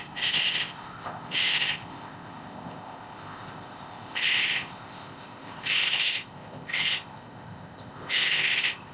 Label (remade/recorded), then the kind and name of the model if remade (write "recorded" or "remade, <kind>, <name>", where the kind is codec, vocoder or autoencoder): remade, codec, ZipCodec